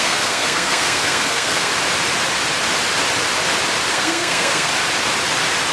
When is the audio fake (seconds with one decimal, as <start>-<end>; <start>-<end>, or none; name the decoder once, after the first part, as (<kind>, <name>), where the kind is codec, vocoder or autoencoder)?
0.0-1.7 (codec, SNAC); 3.9-4.7